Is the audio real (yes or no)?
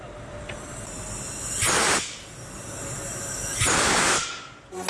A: yes